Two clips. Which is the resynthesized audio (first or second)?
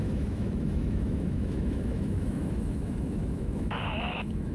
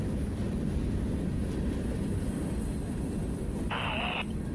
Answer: first